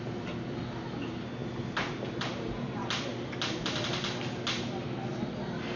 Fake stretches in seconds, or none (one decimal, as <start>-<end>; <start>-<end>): none